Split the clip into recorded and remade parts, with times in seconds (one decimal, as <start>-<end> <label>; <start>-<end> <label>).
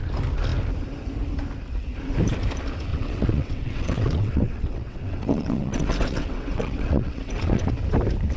0.0-2.9 recorded; 2.9-7.7 remade; 7.7-8.4 recorded